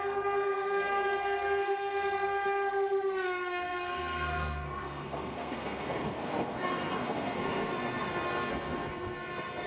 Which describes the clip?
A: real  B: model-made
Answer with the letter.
B